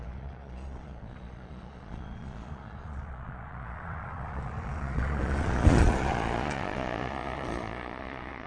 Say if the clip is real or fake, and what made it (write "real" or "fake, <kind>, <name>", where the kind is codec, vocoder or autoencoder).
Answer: fake, vocoder, Vocos